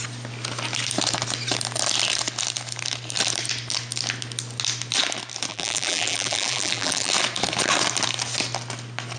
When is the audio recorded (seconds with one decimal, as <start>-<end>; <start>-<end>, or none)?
0.0-5.5; 7.1-9.2